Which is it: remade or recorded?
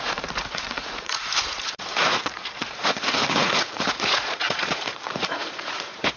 remade